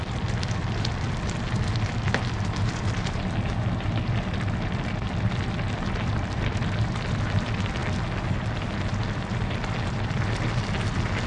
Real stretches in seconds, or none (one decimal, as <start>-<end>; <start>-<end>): 7.8-8.3